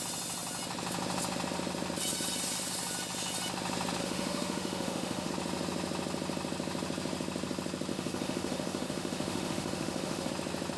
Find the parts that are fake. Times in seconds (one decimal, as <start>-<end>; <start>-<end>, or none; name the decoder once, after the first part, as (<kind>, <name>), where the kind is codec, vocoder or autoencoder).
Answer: 4.0-5.3 (autoencoder, DAC-VAE); 7.9-10.3

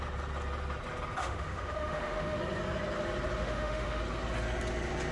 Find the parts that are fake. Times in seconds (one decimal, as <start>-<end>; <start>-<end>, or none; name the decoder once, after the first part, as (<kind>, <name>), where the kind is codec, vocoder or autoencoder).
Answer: 1.2-2.4 (autoencoder, DAC-VAE); 3.4-4.0

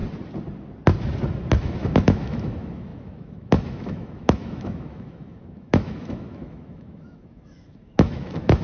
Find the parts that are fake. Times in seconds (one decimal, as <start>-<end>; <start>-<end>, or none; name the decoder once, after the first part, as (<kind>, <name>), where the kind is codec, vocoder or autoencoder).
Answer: 1.6-8.6 (autoencoder, DAC-VAE)